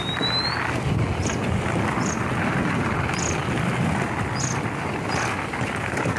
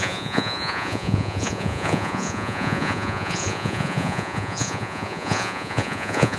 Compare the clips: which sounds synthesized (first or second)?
second